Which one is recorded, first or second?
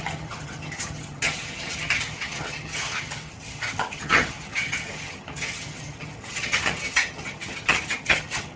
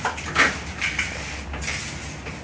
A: second